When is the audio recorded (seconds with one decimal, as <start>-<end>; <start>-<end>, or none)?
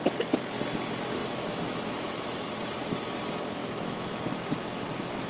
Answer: 0.0-1.2; 2.6-3.6; 4.3-5.3